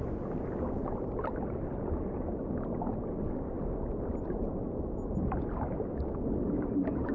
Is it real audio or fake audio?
real